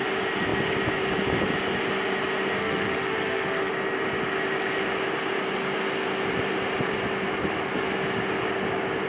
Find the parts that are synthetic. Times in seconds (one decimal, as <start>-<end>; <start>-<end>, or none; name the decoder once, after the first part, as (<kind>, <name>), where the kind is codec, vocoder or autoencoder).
2.6-3.7 (autoencoder, DAC-VAE)